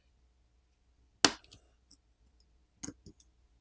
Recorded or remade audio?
recorded